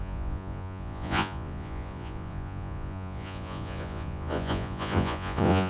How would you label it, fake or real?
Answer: fake